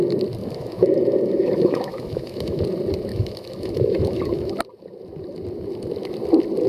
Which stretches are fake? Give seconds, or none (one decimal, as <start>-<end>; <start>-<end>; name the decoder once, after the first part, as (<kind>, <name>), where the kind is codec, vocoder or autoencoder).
0.4-2.6 (autoencoder, DAC-VAE); 3.1-4.5